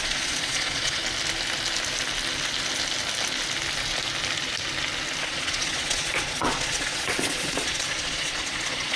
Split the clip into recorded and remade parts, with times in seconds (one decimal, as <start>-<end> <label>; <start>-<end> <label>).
0.0-1.0 remade; 1.0-5.2 recorded; 5.2-9.0 remade